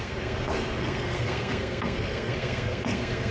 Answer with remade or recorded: remade